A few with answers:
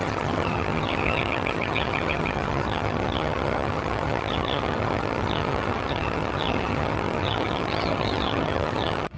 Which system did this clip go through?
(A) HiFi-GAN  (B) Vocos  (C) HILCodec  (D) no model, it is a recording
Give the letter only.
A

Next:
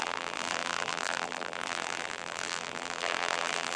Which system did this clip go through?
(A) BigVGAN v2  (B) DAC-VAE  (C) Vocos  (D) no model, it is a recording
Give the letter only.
A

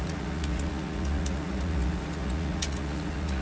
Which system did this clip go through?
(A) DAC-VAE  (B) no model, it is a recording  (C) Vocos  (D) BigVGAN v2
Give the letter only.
C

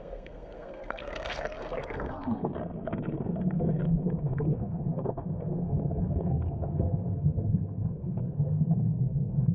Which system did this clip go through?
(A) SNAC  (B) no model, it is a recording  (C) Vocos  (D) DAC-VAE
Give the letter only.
A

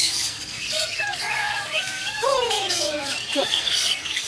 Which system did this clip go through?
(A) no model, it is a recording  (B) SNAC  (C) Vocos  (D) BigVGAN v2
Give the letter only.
B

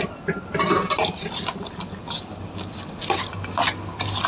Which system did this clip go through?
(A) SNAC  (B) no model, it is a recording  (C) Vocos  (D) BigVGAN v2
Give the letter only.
B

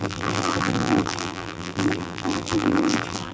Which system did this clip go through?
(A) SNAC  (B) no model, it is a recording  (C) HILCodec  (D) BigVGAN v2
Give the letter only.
D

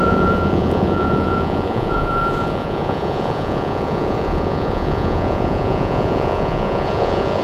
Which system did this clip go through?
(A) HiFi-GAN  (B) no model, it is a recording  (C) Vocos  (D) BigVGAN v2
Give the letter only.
C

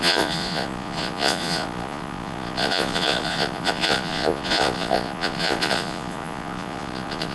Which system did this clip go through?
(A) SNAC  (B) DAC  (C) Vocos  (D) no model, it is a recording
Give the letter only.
C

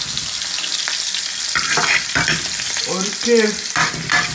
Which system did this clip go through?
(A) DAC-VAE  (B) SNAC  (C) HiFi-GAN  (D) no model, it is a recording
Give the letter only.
D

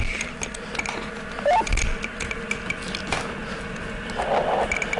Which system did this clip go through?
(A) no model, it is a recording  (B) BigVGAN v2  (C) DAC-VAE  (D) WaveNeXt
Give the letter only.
A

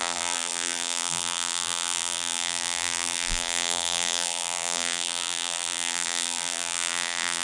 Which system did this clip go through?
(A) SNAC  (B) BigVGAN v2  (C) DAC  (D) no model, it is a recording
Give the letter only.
B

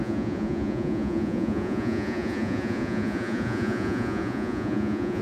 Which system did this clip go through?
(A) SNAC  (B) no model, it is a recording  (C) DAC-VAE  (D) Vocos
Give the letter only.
D